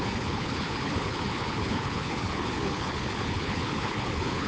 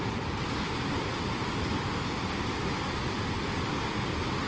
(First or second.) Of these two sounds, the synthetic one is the first